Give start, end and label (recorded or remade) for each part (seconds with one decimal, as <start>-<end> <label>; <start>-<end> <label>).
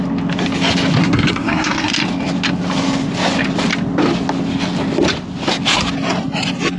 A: 0.0-1.0 recorded; 1.0-1.9 remade; 1.9-6.8 recorded